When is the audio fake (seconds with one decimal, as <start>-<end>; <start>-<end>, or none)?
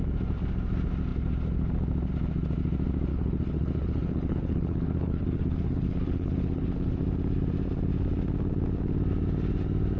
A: 3.1-7.0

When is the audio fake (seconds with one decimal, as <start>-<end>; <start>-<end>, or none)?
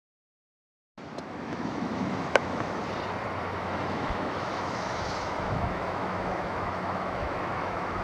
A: 0.0-0.4; 1.2-2.8; 3.6-8.0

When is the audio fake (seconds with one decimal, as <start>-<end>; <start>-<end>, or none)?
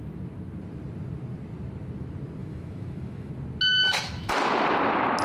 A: 2.4-3.3; 3.7-4.3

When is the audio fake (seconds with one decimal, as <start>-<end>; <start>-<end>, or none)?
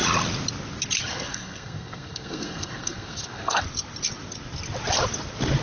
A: 1.1-3.6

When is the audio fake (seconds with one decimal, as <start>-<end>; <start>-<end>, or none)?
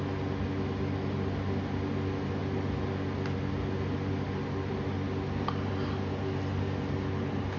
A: none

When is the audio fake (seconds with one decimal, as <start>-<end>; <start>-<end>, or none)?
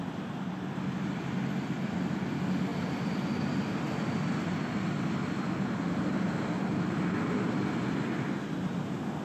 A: none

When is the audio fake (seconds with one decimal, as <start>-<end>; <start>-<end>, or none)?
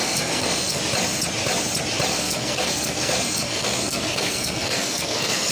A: 0.0-0.8; 2.1-5.5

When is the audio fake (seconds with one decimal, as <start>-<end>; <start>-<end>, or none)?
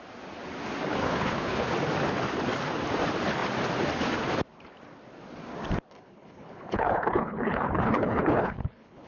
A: 1.0-1.7; 5.9-9.1